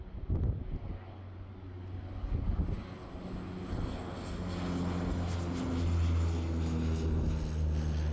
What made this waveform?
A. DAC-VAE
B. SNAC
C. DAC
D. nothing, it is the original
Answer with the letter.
D